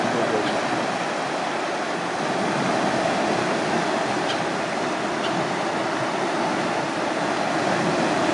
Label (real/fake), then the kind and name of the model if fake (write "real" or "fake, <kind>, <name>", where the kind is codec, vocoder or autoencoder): real